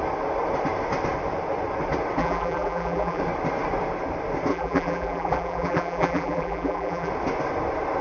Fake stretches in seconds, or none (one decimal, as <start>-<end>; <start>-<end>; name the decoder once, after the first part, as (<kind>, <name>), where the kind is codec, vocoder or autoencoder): 2.2-3.2 (vocoder, BigVGAN v2); 4.5-7.1